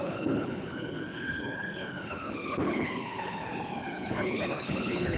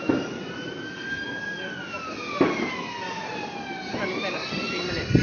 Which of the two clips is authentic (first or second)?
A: second